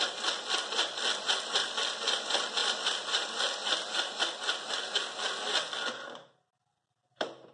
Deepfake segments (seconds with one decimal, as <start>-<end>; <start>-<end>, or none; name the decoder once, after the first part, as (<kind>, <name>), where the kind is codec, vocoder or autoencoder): none